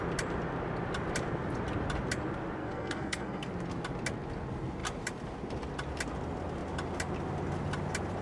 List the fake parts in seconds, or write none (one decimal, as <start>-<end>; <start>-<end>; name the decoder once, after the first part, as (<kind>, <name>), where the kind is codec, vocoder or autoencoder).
2.6-3.5 (codec, SNAC)